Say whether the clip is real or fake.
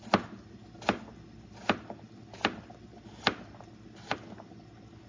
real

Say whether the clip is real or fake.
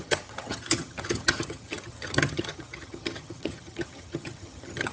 fake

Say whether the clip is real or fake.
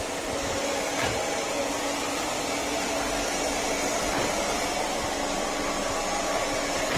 real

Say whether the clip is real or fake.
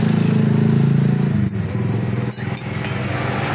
real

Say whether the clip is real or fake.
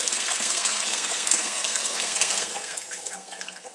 fake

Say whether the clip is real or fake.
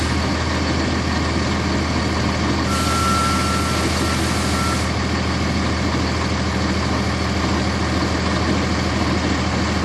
real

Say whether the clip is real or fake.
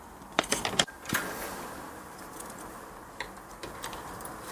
fake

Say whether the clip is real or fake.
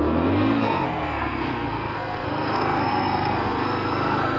fake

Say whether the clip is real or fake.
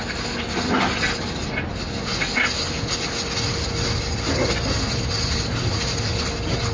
real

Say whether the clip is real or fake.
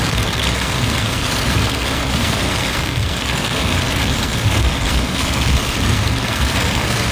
fake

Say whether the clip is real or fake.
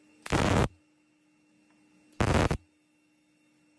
real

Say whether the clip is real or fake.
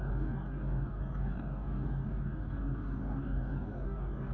fake